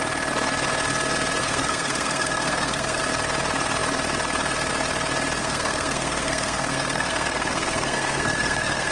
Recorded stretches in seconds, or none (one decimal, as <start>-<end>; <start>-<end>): 0.0-1.4; 3.0-5.4